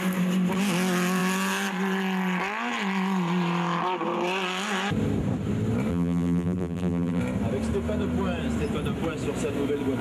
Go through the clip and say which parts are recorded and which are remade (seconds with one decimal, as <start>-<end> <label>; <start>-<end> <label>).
0.0-5.9 recorded; 5.9-7.2 remade; 7.2-10.0 recorded